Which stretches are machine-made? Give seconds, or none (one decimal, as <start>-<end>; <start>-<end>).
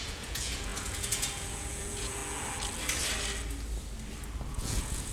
0.0-2.2; 4.5-5.1